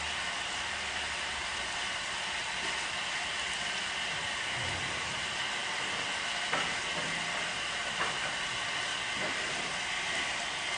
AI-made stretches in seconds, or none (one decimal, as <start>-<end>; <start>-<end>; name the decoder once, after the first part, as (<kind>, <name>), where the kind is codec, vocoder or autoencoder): none